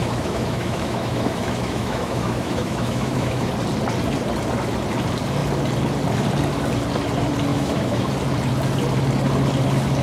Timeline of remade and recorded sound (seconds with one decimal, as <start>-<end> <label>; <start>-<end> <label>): 0.0-3.5 remade; 3.5-7.5 recorded; 7.5-8.1 remade; 8.1-10.0 recorded